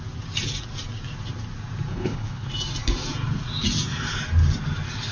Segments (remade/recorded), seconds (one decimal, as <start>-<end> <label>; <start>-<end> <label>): 0.0-1.9 recorded; 1.9-2.5 remade; 2.5-5.1 recorded

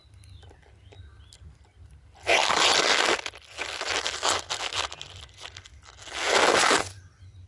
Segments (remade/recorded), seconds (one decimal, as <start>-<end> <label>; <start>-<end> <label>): 0.0-7.5 recorded

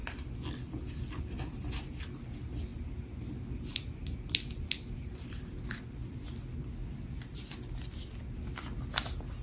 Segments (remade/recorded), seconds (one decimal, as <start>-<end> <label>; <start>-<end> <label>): 0.0-9.4 recorded